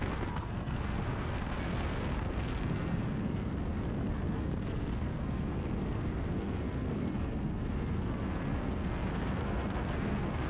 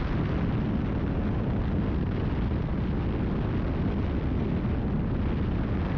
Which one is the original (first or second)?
second